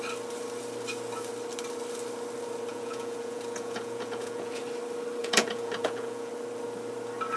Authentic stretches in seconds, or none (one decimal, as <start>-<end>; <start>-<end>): 0.0-2.7; 4.6-5.2; 6.3-7.4